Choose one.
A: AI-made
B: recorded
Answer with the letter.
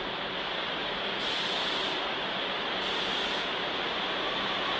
B